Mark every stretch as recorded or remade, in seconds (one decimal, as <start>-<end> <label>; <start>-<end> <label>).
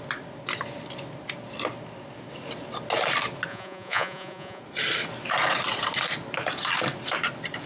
0.0-3.5 recorded; 3.5-4.6 remade; 4.6-7.7 recorded